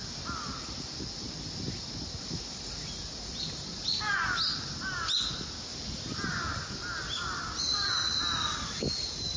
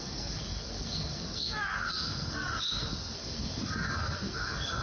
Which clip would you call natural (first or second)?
first